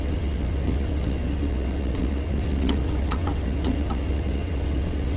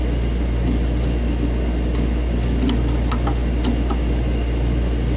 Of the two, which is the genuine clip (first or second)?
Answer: second